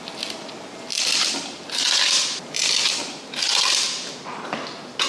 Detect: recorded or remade recorded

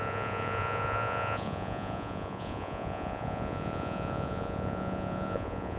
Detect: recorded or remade remade